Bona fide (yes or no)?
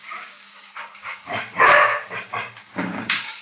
no